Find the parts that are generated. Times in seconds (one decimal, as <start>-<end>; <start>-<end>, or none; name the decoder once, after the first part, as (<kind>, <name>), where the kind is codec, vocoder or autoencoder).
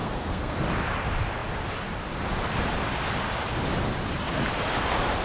0.0-0.6 (codec, SNAC)